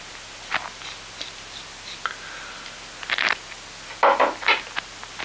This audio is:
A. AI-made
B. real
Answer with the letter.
B